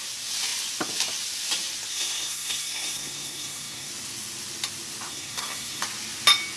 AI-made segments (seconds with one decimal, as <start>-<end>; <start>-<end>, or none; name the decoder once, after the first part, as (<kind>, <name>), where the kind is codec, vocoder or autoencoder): 1.9-3.9 (codec, SNAC); 5.1-5.8